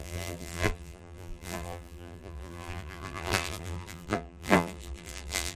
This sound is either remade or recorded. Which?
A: remade